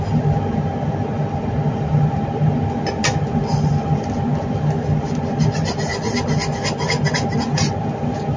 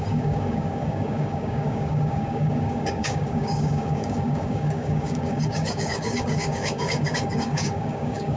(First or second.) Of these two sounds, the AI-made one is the second